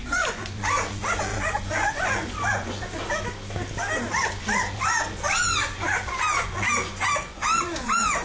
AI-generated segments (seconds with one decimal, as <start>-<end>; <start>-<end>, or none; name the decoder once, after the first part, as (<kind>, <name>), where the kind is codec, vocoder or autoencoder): 0.0-3.0 (vocoder, Vocos); 4.3-8.2